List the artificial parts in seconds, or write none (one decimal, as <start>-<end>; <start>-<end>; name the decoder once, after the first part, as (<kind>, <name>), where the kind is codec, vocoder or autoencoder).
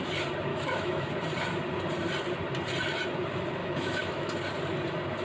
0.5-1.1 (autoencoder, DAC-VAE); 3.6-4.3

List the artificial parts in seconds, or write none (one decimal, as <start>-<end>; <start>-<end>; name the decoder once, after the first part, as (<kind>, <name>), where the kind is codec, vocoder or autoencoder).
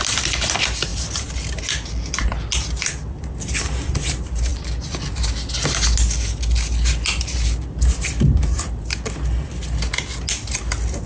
none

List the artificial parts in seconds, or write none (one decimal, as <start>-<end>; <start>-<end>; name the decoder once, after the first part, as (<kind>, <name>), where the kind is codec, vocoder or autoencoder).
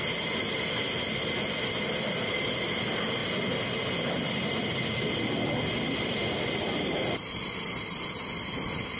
none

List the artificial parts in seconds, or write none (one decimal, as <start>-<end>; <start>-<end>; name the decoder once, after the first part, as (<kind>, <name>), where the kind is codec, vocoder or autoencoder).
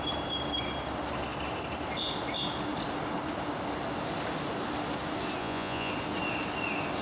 5.4-5.9 (vocoder, Vocos)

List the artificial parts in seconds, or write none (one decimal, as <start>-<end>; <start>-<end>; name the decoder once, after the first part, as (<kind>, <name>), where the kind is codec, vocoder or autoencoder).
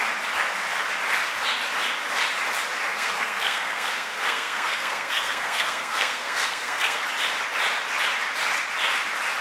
2.9-7.0 (codec, SNAC)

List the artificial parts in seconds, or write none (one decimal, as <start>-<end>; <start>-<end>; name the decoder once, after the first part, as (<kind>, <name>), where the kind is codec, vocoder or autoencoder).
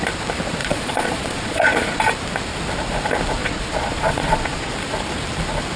0.6-2.0 (vocoder, Vocos); 3.4-4.7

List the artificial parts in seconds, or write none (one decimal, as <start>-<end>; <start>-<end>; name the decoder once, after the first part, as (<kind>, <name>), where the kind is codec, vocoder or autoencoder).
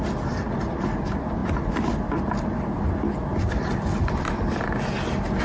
none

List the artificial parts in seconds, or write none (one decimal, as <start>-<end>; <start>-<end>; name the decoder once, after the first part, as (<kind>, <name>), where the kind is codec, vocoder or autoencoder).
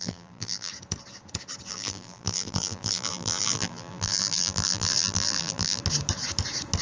0.0-0.7 (vocoder, BigVGAN v2); 1.7-5.8